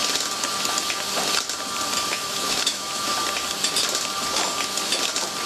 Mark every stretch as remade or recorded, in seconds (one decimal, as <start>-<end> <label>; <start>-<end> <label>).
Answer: 0.0-2.1 recorded; 2.1-3.1 remade; 3.1-5.5 recorded